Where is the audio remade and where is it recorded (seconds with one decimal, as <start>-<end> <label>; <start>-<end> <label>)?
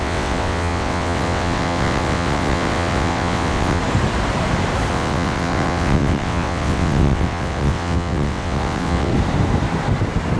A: 0.0-3.8 remade; 3.8-4.9 recorded; 4.9-9.1 remade; 9.1-10.4 recorded